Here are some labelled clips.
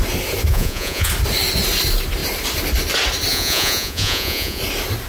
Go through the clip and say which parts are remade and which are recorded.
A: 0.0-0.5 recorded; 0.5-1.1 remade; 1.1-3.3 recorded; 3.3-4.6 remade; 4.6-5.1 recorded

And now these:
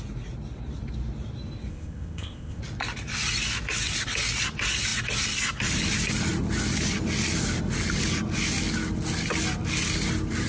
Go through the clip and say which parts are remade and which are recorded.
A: 0.0-1.7 recorded; 1.7-2.6 remade; 2.6-10.5 recorded

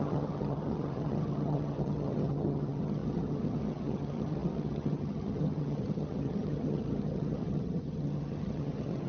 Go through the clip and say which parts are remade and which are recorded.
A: 0.0-9.1 remade

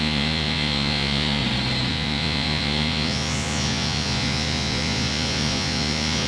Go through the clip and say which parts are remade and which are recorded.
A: 0.0-1.4 remade; 1.4-1.9 recorded; 1.9-6.3 remade

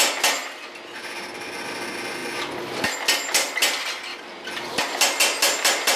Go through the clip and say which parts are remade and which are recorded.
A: 0.0-6.0 recorded

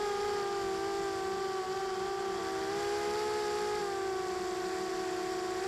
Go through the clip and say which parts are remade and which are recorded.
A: 0.0-1.8 recorded; 1.8-2.4 remade; 2.4-5.7 recorded

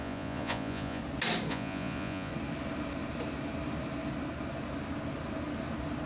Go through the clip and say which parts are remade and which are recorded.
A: 0.0-1.0 remade; 1.0-1.5 recorded; 1.5-2.3 remade; 2.3-6.1 recorded